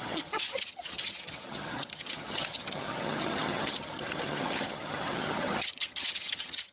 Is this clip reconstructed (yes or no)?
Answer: yes